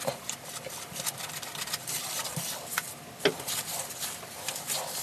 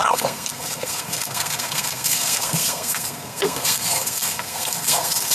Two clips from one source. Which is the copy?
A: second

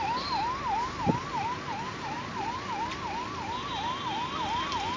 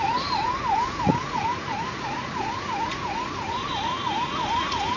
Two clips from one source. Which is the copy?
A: second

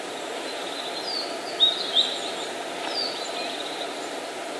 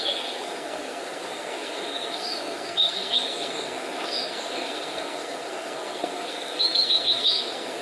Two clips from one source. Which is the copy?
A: second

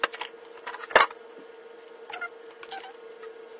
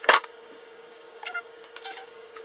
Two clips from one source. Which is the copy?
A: second